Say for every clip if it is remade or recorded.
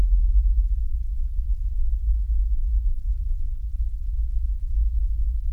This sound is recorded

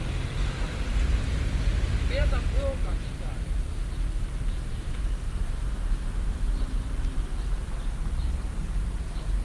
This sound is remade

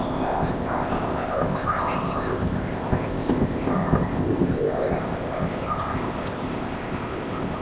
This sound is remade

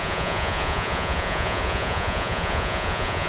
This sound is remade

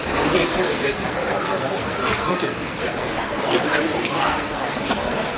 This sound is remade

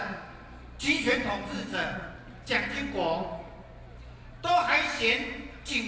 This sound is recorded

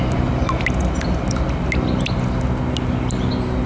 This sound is recorded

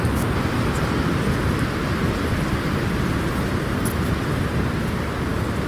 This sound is recorded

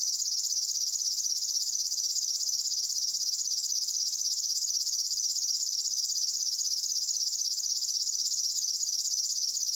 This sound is remade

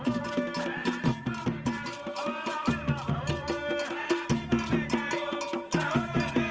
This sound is recorded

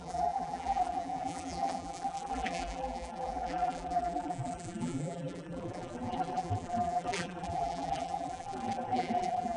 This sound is remade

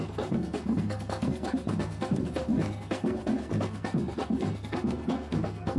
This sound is remade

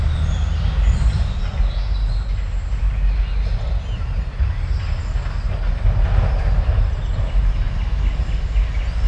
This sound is recorded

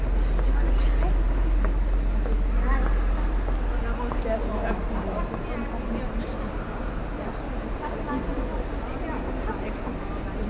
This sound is recorded